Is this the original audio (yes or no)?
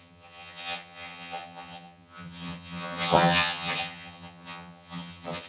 no